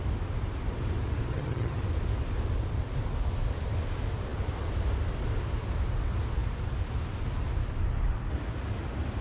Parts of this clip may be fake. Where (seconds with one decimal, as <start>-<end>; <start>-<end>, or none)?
1.3-1.8